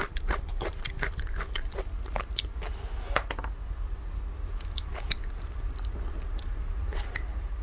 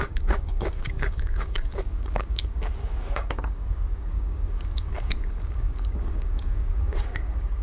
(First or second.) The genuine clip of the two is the first